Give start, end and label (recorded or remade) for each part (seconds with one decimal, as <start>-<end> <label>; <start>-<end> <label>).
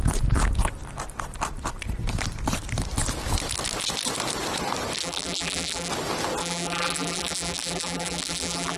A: 0.0-5.0 recorded; 5.0-5.9 remade; 5.9-6.4 recorded; 6.4-8.8 remade